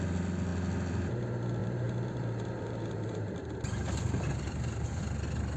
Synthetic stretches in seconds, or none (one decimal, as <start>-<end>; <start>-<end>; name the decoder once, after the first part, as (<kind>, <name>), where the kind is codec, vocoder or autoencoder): 1.6-5.0 (vocoder, BigVGAN v2)